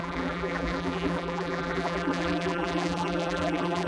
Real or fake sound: fake